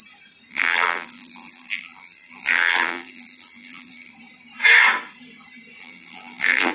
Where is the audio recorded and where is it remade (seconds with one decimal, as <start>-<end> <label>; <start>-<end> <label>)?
0.0-0.5 recorded; 0.5-4.1 remade; 4.1-5.8 recorded; 5.8-6.7 remade